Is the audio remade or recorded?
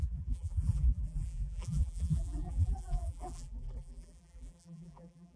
remade